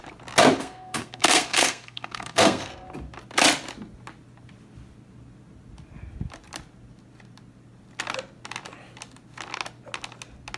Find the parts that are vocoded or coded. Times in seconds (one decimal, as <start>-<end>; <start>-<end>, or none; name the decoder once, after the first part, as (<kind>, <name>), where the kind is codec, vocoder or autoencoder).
0.6-2.7 (codec, SNAC)